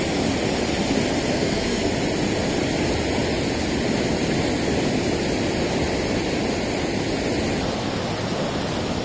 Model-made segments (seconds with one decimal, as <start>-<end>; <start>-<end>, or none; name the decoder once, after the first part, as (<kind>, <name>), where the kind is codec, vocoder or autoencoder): 1.3-1.9 (codec, SNAC)